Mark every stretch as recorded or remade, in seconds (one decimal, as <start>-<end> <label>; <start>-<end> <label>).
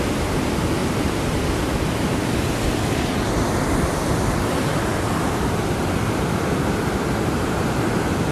0.0-8.3 recorded